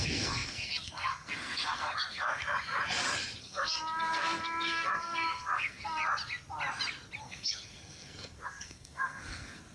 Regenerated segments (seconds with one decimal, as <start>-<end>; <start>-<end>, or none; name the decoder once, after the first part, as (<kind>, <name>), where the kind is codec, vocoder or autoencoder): 0.0-2.4 (codec, SNAC); 3.4-6.0; 7.2-9.7